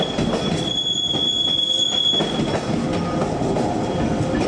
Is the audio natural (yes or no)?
yes